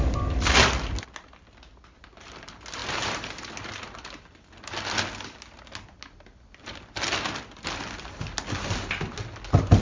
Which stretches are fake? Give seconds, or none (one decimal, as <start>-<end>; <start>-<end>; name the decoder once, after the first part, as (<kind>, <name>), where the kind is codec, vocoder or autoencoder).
2.8-3.5 (vocoder, BigVGAN v2)